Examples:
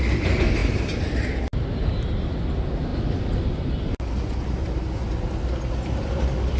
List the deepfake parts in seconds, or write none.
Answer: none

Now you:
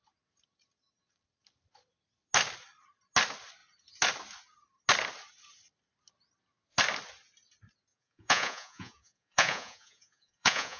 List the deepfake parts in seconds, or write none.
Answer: 7.9-10.8 (vocoder, Vocos)

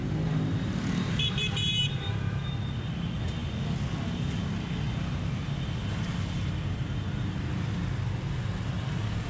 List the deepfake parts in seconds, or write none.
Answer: 0.0-2.5 (vocoder, BigVGAN v2)

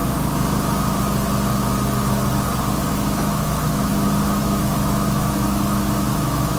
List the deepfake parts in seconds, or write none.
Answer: 2.9-3.9 (autoencoder, DAC-VAE); 4.4-6.6